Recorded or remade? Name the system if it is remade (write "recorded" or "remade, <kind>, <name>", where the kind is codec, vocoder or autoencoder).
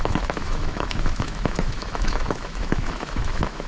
remade, autoencoder, DAC-VAE